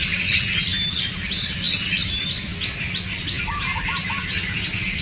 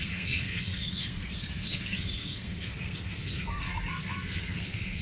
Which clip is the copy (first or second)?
second